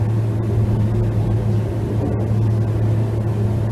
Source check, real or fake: real